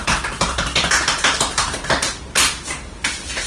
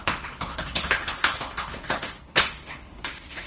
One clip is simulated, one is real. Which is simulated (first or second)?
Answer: second